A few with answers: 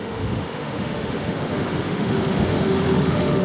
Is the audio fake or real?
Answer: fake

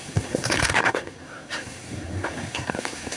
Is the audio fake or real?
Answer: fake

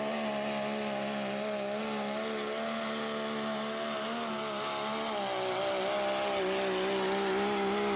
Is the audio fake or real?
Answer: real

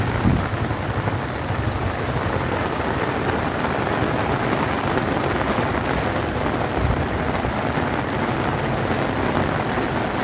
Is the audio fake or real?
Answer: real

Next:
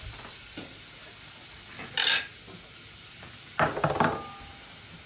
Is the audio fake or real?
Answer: real